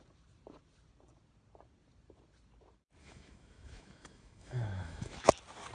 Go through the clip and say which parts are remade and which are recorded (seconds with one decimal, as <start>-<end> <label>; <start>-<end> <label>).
0.0-3.0 recorded; 3.0-5.3 remade; 5.3-5.7 recorded